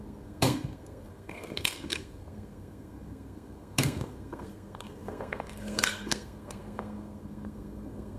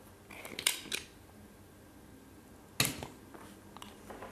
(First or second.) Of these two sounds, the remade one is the first